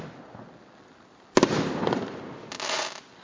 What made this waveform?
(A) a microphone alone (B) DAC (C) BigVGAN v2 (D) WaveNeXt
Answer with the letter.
A